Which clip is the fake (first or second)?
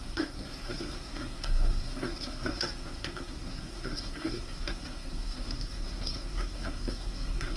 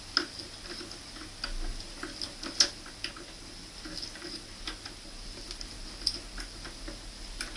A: first